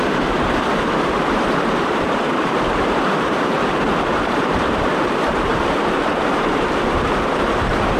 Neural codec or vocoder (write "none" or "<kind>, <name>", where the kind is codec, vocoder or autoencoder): vocoder, BigVGAN v2